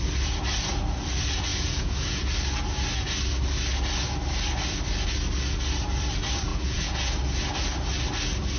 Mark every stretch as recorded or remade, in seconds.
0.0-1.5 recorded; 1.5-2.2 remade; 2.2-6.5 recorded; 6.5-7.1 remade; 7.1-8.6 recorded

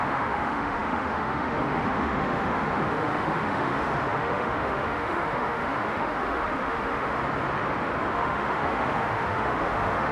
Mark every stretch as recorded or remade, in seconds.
0.0-7.2 remade; 7.2-8.1 recorded; 8.1-10.1 remade

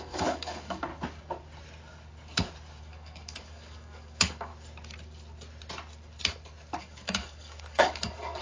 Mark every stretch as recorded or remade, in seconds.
0.0-0.9 remade; 0.9-2.8 recorded; 2.8-4.5 remade; 4.5-6.8 recorded; 6.8-8.4 remade